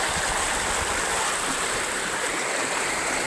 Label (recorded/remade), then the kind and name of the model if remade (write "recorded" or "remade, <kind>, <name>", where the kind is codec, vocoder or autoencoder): recorded